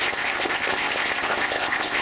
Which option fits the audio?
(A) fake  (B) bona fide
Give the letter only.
A